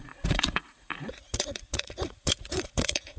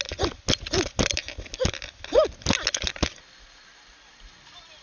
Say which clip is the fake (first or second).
first